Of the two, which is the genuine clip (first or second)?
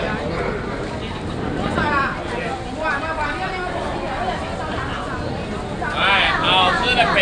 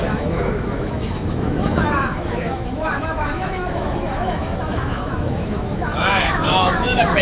first